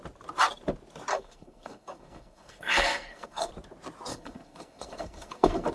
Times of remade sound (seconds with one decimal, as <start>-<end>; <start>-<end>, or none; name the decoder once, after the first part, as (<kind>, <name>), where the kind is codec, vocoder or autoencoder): 1.1-3.5 (codec, SNAC); 4.1-5.7